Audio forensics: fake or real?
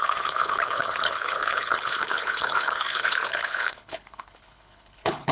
fake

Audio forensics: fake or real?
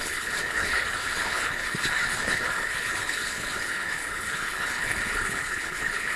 fake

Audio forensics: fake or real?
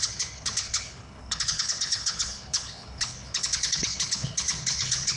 fake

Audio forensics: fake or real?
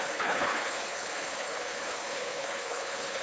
fake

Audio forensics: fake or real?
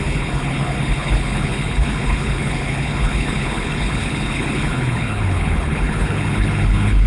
fake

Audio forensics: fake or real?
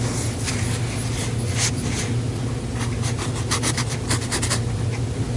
real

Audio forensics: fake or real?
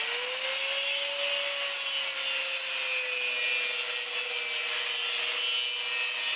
real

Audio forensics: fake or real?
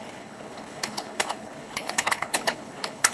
fake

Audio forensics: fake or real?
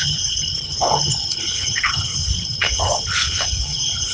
fake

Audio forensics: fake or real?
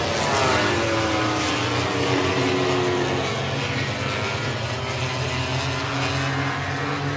real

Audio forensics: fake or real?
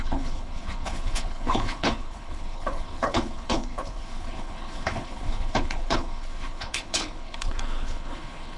fake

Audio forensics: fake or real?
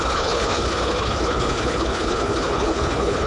fake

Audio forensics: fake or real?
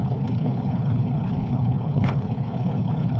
fake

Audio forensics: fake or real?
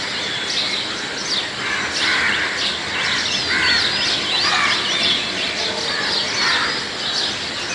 real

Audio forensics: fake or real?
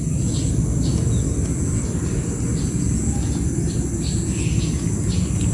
real